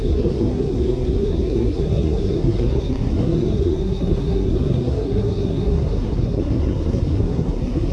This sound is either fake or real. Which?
fake